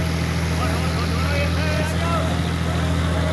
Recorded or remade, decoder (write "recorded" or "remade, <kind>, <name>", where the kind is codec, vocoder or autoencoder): recorded